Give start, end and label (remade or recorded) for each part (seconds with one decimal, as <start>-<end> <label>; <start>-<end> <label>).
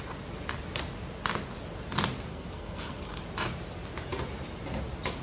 0.0-2.3 recorded; 2.3-3.2 remade; 3.2-5.2 recorded